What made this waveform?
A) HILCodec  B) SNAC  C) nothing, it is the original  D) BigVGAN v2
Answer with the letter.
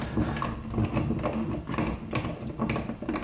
C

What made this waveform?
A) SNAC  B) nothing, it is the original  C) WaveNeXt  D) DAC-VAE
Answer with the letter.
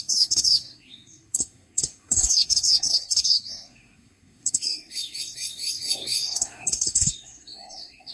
A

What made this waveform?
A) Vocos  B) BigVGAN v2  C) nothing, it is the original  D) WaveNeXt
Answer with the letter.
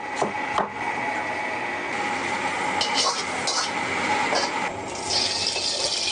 C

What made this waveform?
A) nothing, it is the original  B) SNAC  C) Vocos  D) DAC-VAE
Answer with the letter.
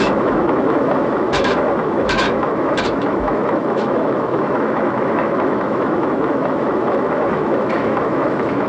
D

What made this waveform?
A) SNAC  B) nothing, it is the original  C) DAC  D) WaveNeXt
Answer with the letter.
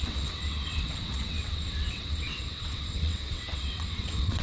D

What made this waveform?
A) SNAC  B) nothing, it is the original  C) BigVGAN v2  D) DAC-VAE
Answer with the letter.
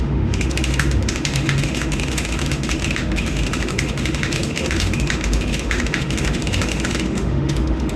D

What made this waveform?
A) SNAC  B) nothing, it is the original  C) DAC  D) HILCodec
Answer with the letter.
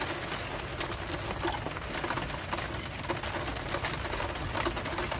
B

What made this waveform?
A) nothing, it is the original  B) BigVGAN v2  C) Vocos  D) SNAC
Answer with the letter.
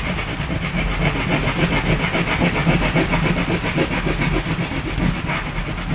A